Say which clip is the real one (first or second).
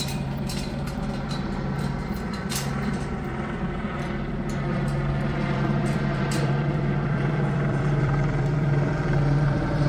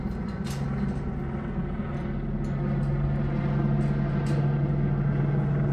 second